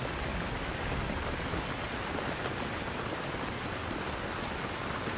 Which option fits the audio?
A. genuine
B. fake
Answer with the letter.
A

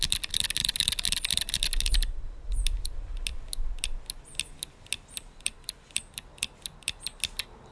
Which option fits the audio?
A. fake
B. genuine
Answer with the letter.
B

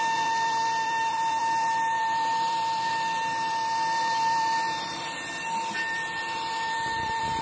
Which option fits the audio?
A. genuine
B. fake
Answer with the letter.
B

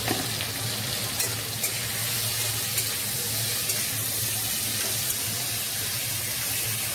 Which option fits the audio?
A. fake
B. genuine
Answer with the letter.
B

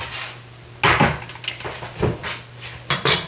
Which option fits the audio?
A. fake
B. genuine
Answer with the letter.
B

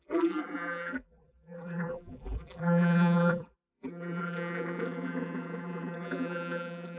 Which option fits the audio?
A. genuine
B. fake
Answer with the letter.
B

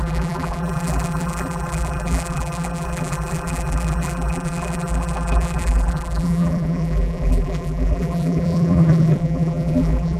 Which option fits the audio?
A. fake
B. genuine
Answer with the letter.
A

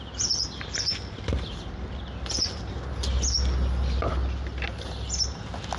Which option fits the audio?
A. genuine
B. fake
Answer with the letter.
A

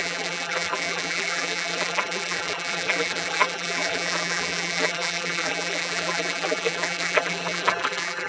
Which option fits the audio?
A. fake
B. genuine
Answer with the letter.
A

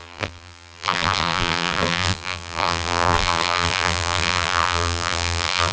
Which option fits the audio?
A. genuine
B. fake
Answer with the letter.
B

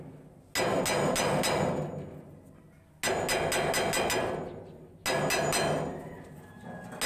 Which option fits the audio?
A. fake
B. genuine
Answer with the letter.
B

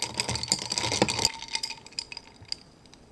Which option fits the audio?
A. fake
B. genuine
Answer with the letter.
B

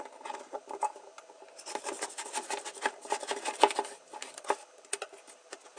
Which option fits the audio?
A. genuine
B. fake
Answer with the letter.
B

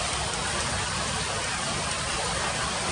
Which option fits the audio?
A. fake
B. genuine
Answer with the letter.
A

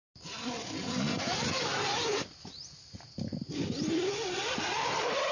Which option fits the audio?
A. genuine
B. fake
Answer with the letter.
A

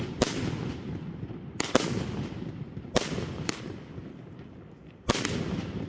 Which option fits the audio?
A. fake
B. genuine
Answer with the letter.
B